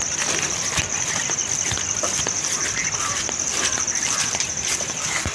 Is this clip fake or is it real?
fake